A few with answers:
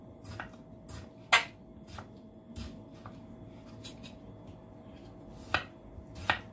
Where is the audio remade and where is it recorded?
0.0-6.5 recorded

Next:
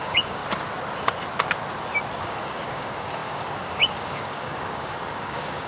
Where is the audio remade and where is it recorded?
0.0-0.4 remade; 0.4-2.2 recorded; 2.2-5.7 remade